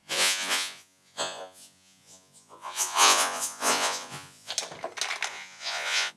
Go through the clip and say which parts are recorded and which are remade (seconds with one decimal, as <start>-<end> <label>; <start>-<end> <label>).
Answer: 0.0-4.5 remade; 4.5-5.3 recorded; 5.3-6.2 remade